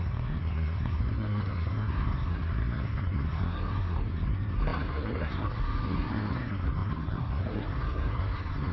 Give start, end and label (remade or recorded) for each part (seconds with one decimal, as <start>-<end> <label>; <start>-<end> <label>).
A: 0.0-8.7 remade